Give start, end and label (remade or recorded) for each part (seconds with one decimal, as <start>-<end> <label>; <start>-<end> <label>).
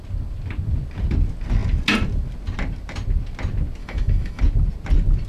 0.0-3.8 recorded; 3.8-4.4 remade; 4.4-5.3 recorded